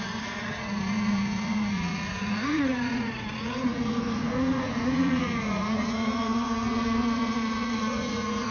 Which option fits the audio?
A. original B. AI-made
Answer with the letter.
B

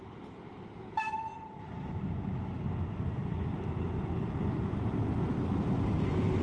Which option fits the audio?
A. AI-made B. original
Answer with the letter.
B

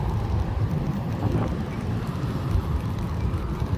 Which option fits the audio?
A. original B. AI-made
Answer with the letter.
A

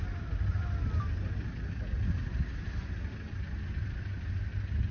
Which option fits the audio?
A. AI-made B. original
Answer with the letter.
B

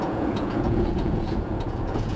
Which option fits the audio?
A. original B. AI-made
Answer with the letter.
B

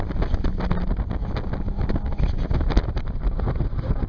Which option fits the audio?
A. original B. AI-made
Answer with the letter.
A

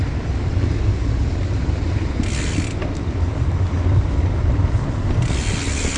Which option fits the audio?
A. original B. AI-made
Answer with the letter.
A